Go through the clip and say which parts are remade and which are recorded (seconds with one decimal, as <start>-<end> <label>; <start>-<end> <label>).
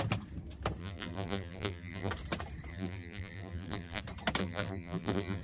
0.0-0.8 recorded; 0.8-2.1 remade; 2.1-2.7 recorded; 2.7-4.0 remade; 4.0-4.4 recorded; 4.4-5.4 remade